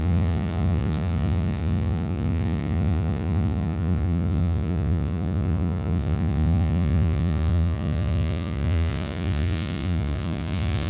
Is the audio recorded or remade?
remade